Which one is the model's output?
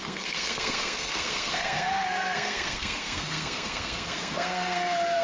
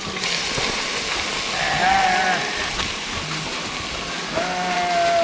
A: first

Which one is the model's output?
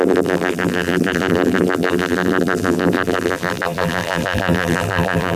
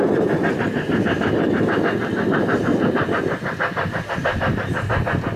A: first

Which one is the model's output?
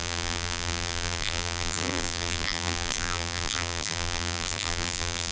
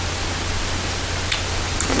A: first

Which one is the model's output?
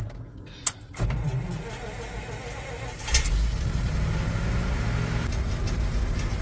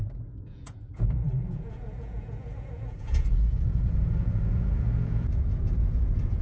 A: second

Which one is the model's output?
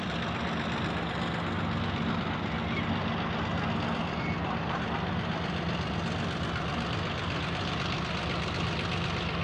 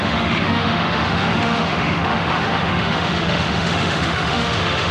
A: second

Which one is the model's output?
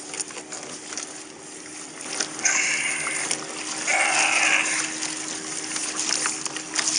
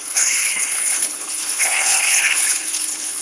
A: second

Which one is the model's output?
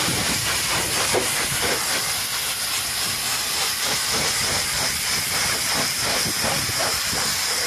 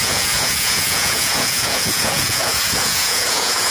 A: second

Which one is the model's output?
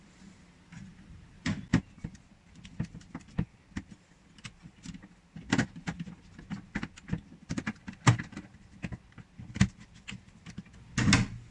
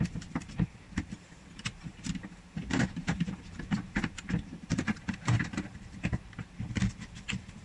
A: second